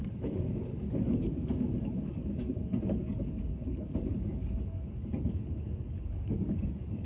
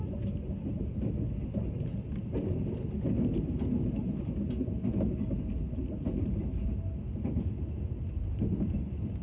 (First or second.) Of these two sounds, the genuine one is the second